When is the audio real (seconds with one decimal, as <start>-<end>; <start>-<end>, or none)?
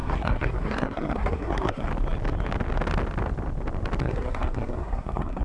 1.9-4.0